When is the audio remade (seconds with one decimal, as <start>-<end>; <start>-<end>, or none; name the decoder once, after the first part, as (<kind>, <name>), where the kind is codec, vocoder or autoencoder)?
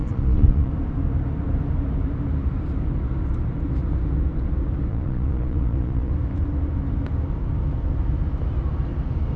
0.0-0.7 (vocoder, Vocos); 4.9-6.1